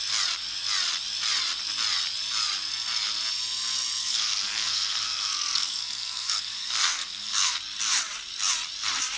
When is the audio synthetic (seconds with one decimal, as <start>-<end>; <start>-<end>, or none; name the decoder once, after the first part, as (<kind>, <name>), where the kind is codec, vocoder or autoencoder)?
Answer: 4.0-7.6 (codec, SNAC)